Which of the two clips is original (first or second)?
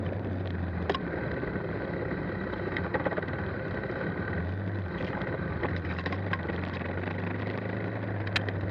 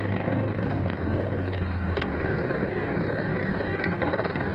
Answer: first